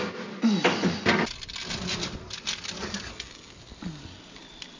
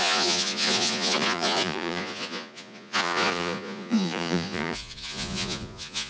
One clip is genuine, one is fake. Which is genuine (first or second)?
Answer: first